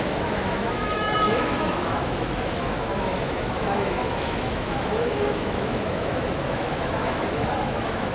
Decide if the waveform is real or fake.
fake